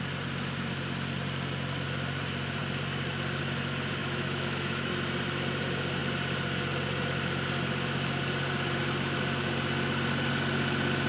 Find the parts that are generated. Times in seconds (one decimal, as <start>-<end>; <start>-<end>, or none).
4.0-4.9